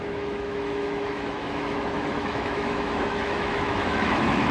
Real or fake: fake